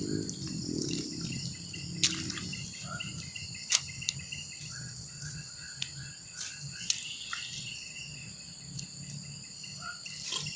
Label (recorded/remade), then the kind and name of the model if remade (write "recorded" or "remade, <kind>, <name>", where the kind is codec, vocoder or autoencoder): recorded